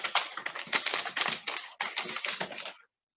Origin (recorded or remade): recorded